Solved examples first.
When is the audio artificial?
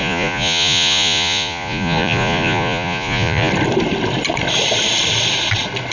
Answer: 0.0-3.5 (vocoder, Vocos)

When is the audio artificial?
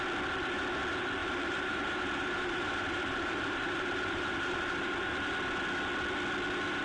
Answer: 1.2-5.3 (vocoder, BigVGAN v2)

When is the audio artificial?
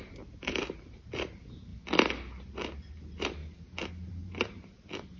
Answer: 0.0-1.7 (vocoder, BigVGAN v2); 2.5-3.4; 4.1-5.2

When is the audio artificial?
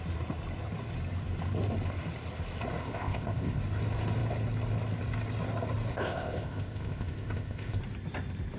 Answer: 2.8-3.6 (codec, ZipCodec); 5.9-7.8